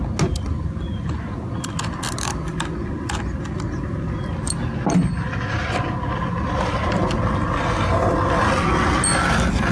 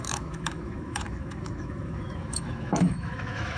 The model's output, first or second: second